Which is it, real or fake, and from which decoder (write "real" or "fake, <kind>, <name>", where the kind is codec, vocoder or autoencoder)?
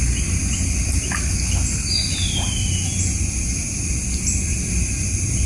real